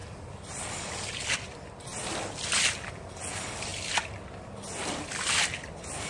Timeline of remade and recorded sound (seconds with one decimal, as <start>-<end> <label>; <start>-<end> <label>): 0.0-6.1 recorded